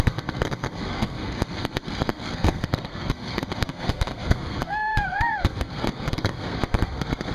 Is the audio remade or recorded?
remade